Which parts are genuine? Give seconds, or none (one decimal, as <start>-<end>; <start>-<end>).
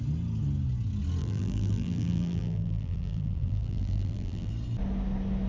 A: 0.0-1.2; 4.5-5.5